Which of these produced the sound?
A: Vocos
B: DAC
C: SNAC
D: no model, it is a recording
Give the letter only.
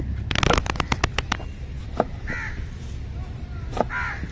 D